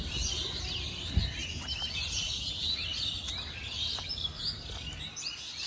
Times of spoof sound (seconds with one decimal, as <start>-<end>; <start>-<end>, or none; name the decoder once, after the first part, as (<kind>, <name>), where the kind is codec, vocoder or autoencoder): 1.4-2.5 (vocoder, BigVGAN v2)